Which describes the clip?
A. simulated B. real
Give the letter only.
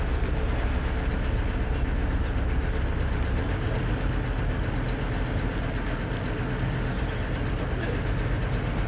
B